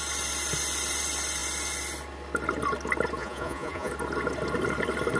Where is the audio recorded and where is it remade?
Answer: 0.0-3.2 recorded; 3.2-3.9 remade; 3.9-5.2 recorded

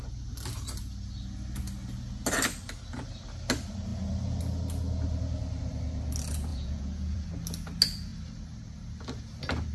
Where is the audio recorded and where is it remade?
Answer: 0.0-6.5 recorded; 6.5-7.3 remade; 7.3-9.7 recorded

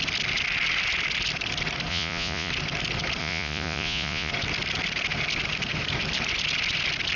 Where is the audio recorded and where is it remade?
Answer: 0.0-1.9 recorded; 1.9-2.5 remade; 2.5-3.2 recorded; 3.2-4.3 remade; 4.3-7.2 recorded